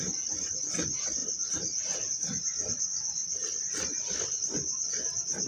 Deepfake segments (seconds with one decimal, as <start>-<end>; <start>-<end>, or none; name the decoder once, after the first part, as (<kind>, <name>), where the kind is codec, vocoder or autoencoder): none